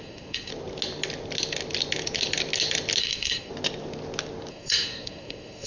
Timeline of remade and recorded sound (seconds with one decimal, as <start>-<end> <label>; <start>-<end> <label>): 0.0-0.5 remade; 0.5-3.0 recorded; 3.0-3.5 remade; 3.5-4.5 recorded; 4.5-5.7 remade